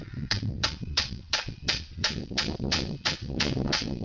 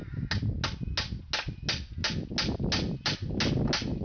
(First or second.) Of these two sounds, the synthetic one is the first